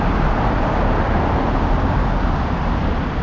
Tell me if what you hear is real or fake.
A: real